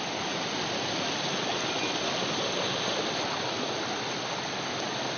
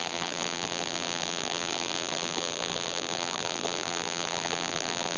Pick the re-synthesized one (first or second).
second